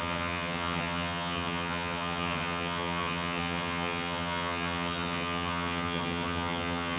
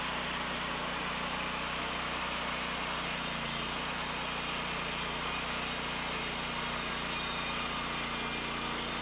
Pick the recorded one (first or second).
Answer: second